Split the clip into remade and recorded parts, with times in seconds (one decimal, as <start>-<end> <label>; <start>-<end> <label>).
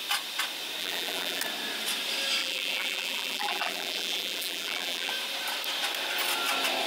0.0-0.8 recorded; 0.8-1.4 remade; 1.4-2.4 recorded; 2.4-5.1 remade; 5.1-6.9 recorded